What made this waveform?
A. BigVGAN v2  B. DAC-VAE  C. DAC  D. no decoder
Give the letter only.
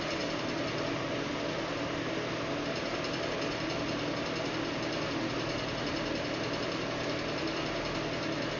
D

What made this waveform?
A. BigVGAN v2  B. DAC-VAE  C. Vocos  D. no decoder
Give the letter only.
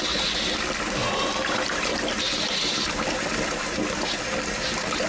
D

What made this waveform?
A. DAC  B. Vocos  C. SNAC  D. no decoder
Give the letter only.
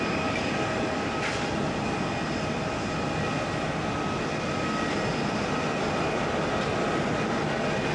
D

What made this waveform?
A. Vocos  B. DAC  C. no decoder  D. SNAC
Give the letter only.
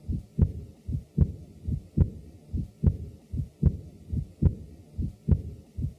C